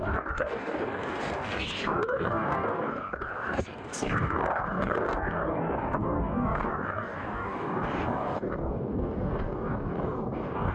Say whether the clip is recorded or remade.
remade